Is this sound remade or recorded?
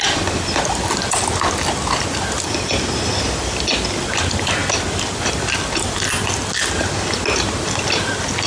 recorded